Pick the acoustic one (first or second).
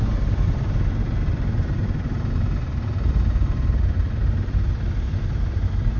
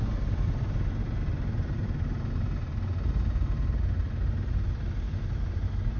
second